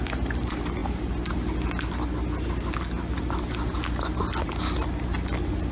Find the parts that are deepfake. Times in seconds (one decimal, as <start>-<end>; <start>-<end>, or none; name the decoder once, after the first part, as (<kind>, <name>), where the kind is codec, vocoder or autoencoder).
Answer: none